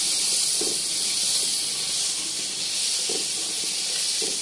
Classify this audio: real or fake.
real